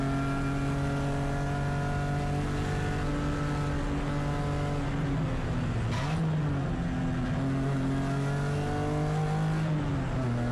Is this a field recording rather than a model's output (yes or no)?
yes